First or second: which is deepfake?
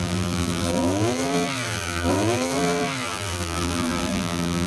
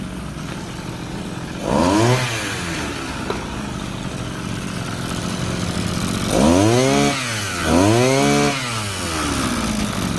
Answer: first